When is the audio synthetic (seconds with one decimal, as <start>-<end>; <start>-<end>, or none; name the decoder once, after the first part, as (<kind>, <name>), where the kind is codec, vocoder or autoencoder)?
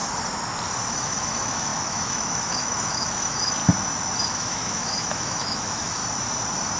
0.9-3.6 (autoencoder, DAC-VAE); 4.2-6.0